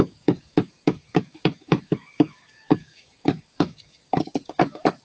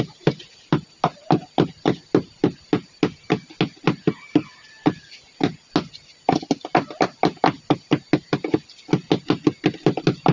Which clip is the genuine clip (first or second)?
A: second